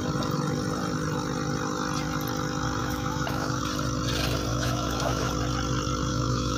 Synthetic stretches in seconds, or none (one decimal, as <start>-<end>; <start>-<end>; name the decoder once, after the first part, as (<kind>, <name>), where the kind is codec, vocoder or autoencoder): 2.8-3.6 (autoencoder, DAC-VAE); 4.5-5.3; 6.1-6.6